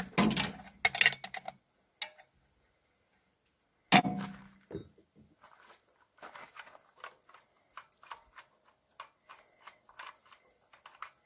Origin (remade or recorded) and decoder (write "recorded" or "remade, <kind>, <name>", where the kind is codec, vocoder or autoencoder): recorded